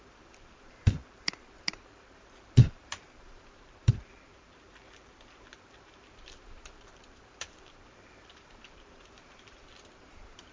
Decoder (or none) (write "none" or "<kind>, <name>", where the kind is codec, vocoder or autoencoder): vocoder, BigVGAN v2